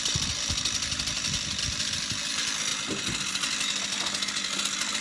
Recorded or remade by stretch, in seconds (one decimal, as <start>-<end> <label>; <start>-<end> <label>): 0.0-5.0 recorded

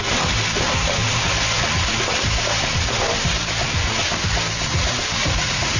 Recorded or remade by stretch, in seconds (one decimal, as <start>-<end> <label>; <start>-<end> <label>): 0.0-5.2 recorded; 5.2-5.8 remade

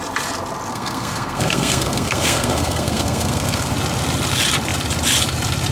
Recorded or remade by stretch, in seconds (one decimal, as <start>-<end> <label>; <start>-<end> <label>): 0.0-0.7 recorded; 0.7-3.7 remade; 3.7-5.7 recorded

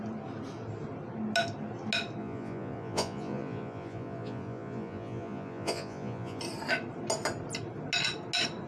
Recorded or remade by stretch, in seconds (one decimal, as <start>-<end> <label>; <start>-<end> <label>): 0.0-2.2 recorded; 2.2-6.4 remade; 6.4-8.7 recorded

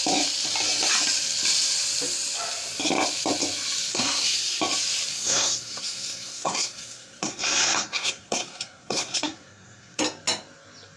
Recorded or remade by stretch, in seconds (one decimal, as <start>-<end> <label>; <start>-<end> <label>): 0.0-3.9 recorded; 3.9-4.6 remade; 4.6-5.1 recorded; 5.1-10.0 remade; 10.0-11.0 recorded

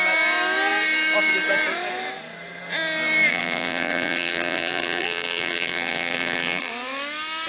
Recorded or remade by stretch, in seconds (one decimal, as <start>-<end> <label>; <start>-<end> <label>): 0.0-3.3 recorded; 3.3-6.7 remade; 6.7-7.5 recorded

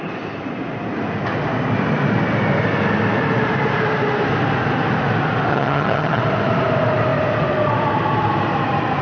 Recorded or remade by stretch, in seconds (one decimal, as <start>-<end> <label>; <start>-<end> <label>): 0.0-5.5 recorded; 5.5-6.2 remade; 6.2-9.0 recorded